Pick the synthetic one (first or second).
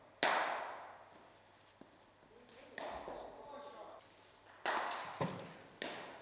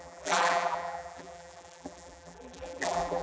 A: second